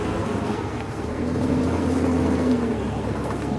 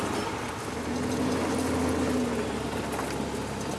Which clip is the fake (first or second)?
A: first